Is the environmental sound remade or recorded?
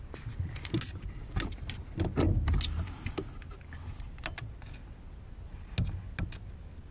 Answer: recorded